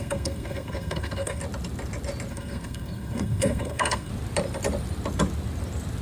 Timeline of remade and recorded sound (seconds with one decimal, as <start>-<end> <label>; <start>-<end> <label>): 0.0-1.4 remade; 1.4-2.3 recorded; 2.3-4.1 remade; 4.1-6.0 recorded